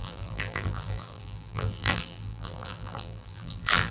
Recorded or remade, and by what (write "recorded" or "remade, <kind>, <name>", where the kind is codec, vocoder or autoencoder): remade, vocoder, BigVGAN v2